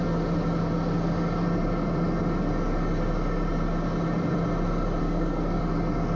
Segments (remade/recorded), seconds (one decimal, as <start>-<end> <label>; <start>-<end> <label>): 0.0-5.0 recorded; 5.0-5.6 remade; 5.6-6.1 recorded